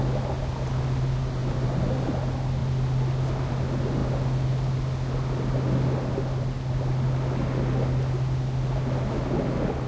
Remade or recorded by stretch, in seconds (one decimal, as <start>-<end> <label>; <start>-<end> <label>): 0.0-1.4 recorded; 1.4-2.1 remade; 2.1-9.9 recorded